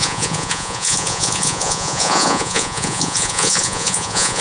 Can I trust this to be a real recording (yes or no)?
no